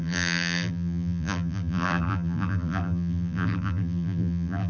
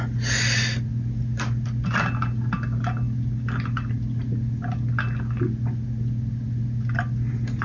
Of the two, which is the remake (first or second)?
first